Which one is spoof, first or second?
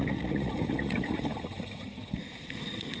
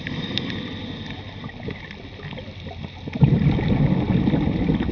first